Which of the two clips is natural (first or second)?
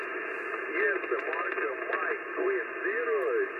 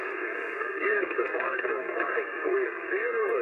first